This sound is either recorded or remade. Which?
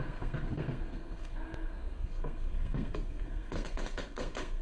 remade